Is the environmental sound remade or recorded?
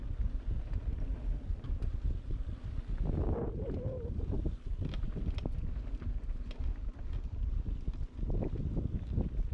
recorded